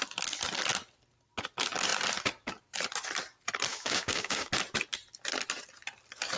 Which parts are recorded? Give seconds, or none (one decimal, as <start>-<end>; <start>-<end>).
0.0-3.7; 4.5-6.4